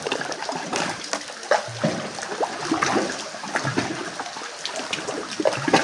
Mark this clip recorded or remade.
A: recorded